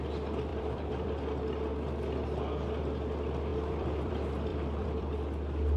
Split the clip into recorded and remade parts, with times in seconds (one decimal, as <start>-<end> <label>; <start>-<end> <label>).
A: 0.0-0.5 recorded; 0.5-1.2 remade; 1.2-3.5 recorded; 3.5-4.1 remade; 4.1-4.5 recorded; 4.5-5.1 remade; 5.1-5.8 recorded